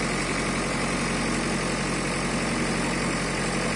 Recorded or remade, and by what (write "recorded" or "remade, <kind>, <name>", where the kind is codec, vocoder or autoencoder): recorded